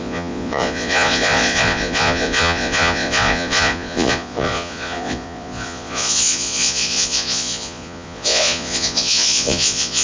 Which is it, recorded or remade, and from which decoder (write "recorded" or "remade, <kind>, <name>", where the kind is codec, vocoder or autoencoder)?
remade, vocoder, Vocos